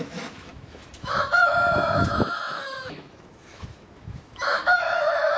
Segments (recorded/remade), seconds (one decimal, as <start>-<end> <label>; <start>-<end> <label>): 0.0-5.4 remade